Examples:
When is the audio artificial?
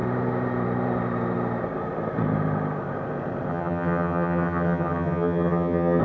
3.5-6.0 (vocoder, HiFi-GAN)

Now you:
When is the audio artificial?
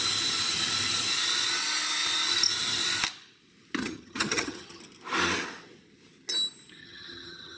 3.8-4.8 (vocoder, HiFi-GAN); 6.8-7.6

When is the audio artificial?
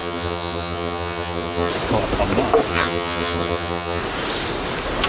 0.0-1.7 (vocoder, HiFi-GAN); 2.7-4.0